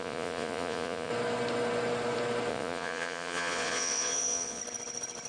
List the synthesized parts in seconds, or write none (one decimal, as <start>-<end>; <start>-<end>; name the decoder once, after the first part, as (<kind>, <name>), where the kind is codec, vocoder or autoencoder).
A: 0.0-1.1 (vocoder, Vocos); 2.5-4.6